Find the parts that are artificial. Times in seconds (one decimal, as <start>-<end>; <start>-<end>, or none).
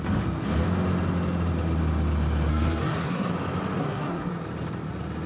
2.5-3.3; 3.8-4.3